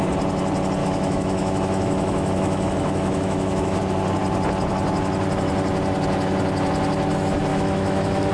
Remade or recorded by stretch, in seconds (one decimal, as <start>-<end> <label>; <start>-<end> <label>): 0.0-0.8 recorded; 0.8-3.8 remade; 3.8-7.5 recorded; 7.5-8.3 remade